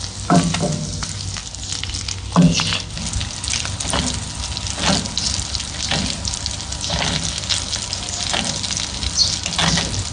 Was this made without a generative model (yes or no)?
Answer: yes